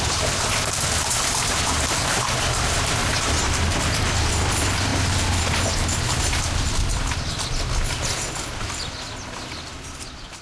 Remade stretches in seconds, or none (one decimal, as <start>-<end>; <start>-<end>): 3.0-3.7